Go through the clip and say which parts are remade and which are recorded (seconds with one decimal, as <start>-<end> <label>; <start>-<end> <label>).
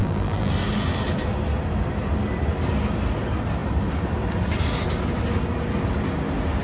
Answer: 0.0-0.5 remade; 0.5-6.6 recorded